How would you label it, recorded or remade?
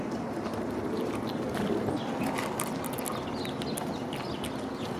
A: recorded